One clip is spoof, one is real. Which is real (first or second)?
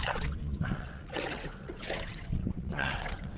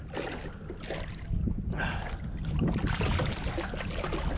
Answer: second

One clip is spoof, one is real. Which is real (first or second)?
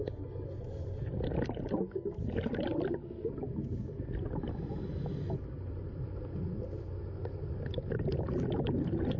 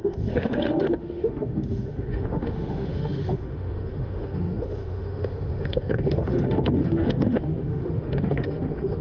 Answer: first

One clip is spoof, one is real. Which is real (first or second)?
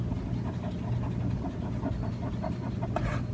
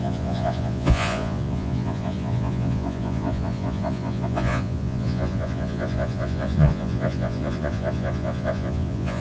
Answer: first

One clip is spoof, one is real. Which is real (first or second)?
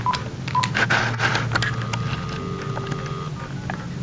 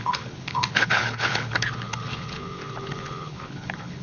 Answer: first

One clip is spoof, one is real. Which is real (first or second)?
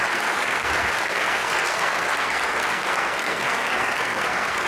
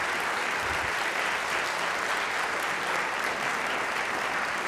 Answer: second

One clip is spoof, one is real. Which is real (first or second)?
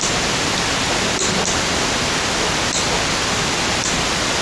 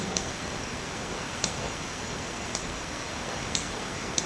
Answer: first